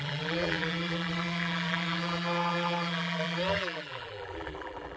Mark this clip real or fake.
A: fake